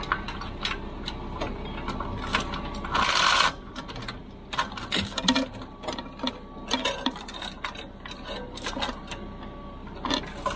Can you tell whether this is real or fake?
real